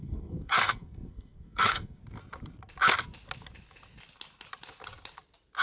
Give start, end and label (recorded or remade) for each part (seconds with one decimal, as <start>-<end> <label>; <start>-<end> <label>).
0.0-2.0 remade; 2.0-5.6 recorded